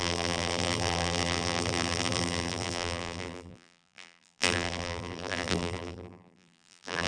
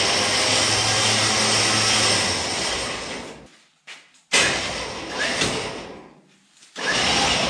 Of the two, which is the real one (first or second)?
second